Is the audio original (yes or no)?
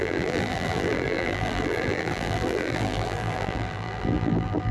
no